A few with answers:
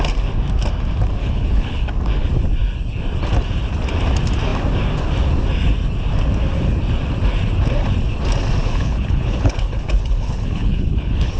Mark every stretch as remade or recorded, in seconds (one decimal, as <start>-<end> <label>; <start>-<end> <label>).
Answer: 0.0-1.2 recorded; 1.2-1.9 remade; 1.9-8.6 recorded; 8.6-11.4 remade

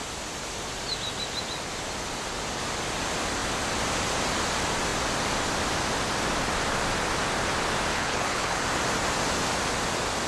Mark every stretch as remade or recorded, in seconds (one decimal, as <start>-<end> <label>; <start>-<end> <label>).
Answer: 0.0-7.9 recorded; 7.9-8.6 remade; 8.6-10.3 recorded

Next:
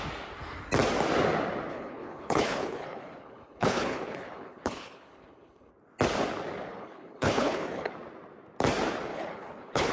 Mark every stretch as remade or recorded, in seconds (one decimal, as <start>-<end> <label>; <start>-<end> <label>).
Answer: 0.0-1.7 recorded; 1.7-5.7 remade; 5.7-6.7 recorded; 6.7-7.9 remade; 7.9-9.1 recorded; 9.1-9.9 remade